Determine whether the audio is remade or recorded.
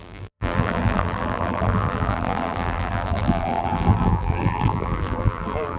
remade